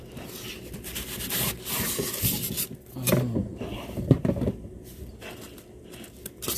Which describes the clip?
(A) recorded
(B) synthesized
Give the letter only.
A